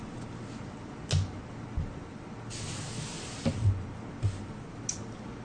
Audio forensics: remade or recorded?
recorded